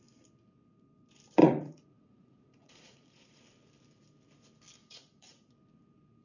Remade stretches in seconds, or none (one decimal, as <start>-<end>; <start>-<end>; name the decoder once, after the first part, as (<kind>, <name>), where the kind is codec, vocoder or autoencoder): 1.4-3.4 (vocoder, Vocos); 4.8-5.5